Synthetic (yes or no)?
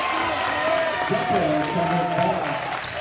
no